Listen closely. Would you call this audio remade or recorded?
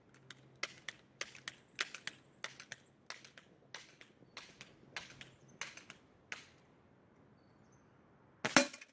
recorded